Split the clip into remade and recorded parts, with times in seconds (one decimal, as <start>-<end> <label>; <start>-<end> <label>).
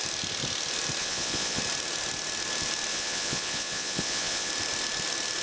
0.0-1.0 recorded; 1.0-1.6 remade; 1.6-2.9 recorded; 2.9-4.5 remade; 4.5-5.4 recorded